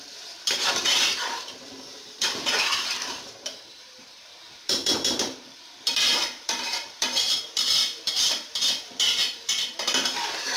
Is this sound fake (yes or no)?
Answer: yes